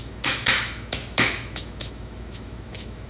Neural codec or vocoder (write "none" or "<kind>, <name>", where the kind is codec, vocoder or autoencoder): autoencoder, DAC-VAE